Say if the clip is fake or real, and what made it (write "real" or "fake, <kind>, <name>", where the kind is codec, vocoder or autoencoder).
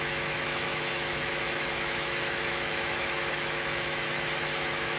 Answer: fake, autoencoder, DAC-VAE